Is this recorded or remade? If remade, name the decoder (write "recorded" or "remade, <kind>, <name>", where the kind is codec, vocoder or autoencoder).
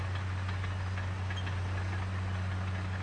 recorded